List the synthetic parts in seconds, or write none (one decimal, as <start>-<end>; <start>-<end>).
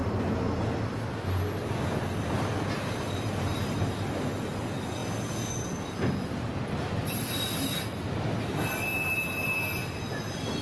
none